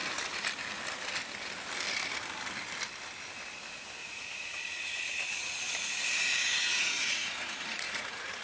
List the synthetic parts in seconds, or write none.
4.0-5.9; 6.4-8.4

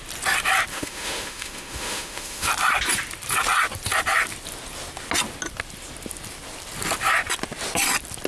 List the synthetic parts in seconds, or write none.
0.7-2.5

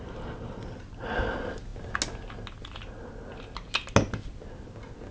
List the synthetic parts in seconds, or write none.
none

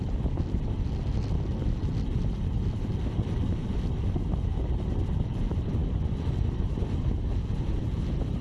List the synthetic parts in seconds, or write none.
5.8-6.8